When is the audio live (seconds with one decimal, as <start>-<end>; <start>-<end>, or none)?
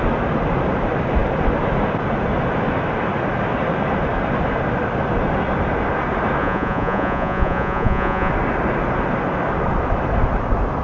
0.0-6.4; 8.3-10.8